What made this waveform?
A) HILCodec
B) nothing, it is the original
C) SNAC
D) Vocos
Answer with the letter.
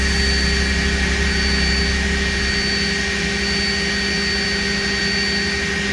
B